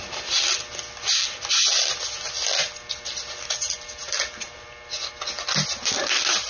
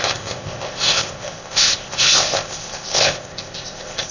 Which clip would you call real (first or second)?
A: first